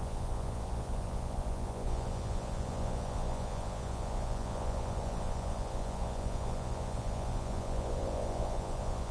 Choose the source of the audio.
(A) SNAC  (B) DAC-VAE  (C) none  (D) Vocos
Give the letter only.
D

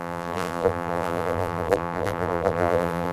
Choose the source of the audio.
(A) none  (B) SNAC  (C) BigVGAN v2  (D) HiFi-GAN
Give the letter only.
C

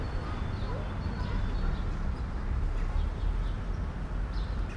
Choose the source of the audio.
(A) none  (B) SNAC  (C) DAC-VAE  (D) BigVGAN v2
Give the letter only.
A